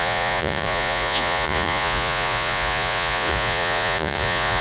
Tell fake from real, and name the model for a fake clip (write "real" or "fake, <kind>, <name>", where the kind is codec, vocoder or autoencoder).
fake, vocoder, Vocos